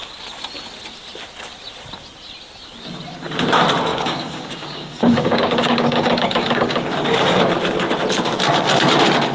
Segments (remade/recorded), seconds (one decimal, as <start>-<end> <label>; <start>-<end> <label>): 0.0-3.9 recorded; 3.9-7.4 remade; 7.4-9.3 recorded